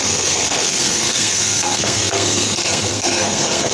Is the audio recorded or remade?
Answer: remade